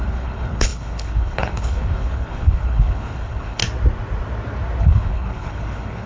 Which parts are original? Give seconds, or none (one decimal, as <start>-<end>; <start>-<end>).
3.6-4.8